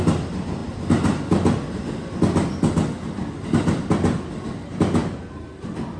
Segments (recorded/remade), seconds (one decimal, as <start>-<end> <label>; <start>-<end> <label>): 0.0-6.0 recorded